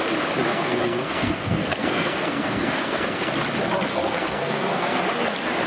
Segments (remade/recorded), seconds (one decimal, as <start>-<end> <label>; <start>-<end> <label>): 0.0-0.5 recorded; 0.5-3.3 remade; 3.3-3.9 recorded; 3.9-5.0 remade; 5.0-5.7 recorded